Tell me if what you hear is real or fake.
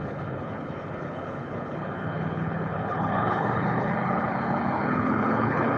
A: fake